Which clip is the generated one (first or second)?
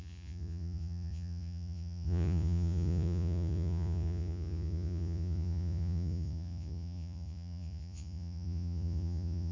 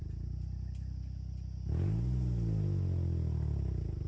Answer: first